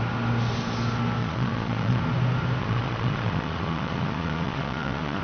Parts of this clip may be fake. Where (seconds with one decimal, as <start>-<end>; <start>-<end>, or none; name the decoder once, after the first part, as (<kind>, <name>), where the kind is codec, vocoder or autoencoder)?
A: 1.2-2.0 (vocoder, Vocos); 2.6-5.2